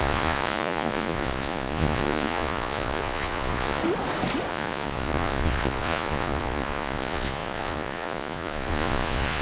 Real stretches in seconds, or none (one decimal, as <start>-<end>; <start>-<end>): 3.8-4.5